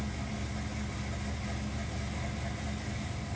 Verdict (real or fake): real